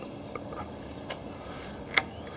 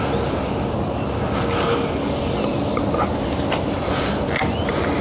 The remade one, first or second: first